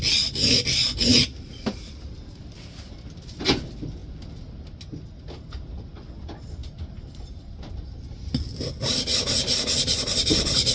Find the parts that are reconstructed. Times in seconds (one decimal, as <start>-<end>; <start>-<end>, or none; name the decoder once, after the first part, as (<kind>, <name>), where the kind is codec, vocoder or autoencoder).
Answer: none